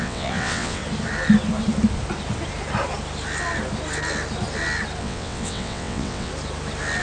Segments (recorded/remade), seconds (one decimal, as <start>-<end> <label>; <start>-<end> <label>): 0.0-0.8 remade; 0.8-5.0 recorded; 5.0-6.3 remade; 6.3-7.0 recorded